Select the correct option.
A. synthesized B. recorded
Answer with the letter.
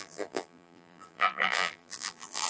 A